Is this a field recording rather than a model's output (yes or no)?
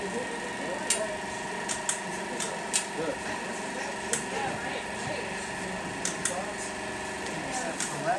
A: yes